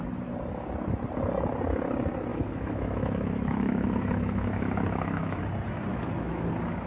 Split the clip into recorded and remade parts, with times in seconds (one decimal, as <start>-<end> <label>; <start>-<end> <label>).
0.0-2.3 recorded; 2.3-5.4 remade; 5.4-5.9 recorded; 5.9-6.5 remade; 6.5-6.9 recorded